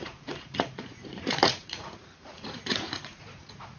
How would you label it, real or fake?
fake